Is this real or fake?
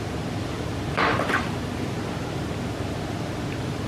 fake